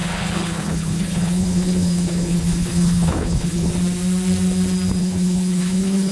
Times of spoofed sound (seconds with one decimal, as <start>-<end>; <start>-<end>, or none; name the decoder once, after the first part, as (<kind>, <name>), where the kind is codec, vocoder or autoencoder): 0.0-3.7 (codec, HILCodec); 5.0-6.1

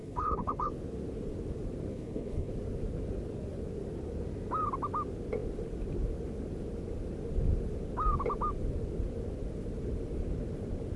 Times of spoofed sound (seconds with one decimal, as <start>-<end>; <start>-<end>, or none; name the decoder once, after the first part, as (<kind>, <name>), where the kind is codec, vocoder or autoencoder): 0.0-0.7 (codec, HILCodec); 1.9-2.5